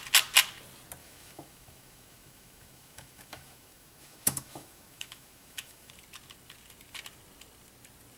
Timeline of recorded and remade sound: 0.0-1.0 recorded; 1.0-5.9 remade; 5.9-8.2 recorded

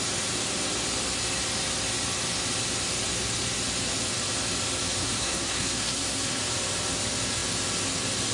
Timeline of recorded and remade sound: 0.0-5.0 recorded; 5.0-6.4 remade; 6.4-8.3 recorded

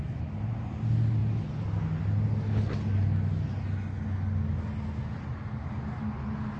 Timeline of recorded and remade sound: 0.0-6.6 recorded